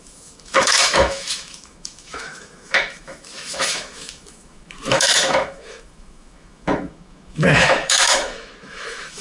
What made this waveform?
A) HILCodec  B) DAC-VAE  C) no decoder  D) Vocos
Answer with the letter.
B